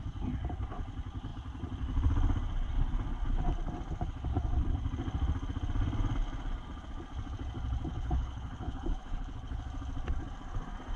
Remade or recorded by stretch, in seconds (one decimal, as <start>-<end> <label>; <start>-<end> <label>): 0.0-7.9 recorded; 7.9-9.6 remade; 9.6-11.0 recorded